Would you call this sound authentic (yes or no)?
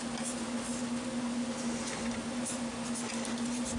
yes